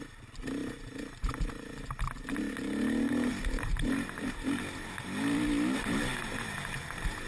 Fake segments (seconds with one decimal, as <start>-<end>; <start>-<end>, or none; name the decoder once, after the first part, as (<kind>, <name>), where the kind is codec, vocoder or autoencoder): 3.3-4.6 (vocoder, BigVGAN v2)